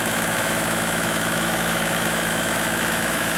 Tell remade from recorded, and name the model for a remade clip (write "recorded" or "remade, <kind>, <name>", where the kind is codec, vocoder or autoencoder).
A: remade, autoencoder, DAC-VAE